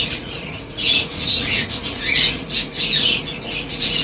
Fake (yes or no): yes